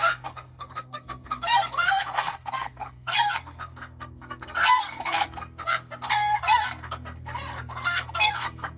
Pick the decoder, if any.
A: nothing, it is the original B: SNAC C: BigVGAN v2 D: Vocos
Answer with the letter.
B